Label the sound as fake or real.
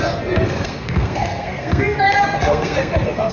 fake